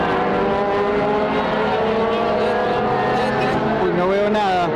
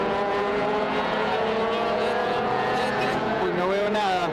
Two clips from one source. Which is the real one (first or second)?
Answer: first